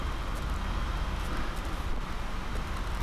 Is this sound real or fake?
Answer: real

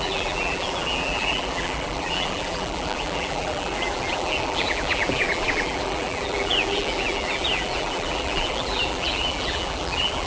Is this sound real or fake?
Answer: fake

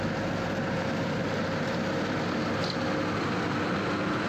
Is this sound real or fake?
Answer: real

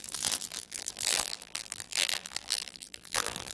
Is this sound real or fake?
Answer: fake